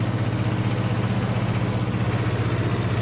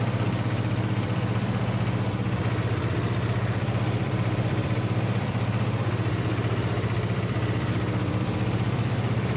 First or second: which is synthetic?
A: second